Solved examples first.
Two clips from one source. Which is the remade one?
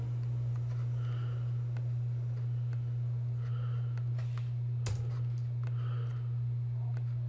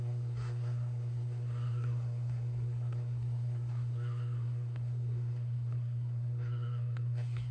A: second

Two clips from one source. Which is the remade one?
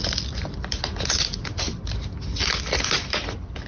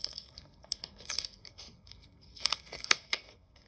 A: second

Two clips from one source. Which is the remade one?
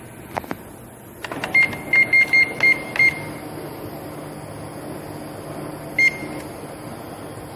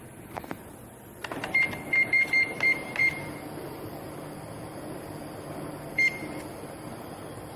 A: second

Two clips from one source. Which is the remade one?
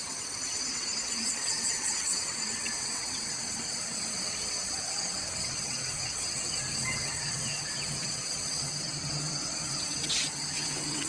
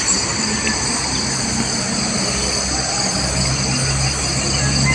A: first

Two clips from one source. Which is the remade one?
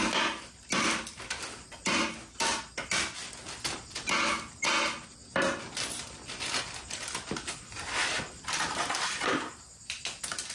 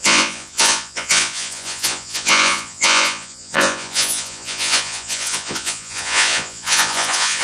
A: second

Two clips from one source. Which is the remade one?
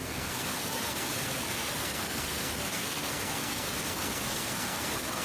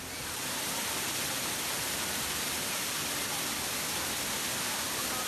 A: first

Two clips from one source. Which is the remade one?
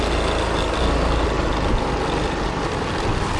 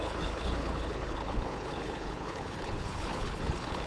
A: second